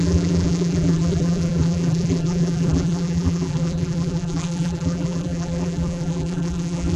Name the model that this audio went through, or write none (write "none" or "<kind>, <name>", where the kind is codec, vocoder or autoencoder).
vocoder, BigVGAN v2